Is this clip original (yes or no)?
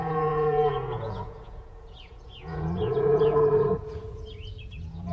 no